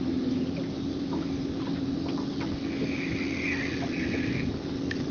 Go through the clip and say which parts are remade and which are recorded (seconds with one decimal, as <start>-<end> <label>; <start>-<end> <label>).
0.0-5.1 recorded